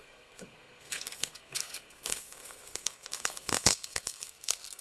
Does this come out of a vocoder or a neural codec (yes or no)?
yes